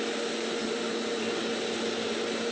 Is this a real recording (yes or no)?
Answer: yes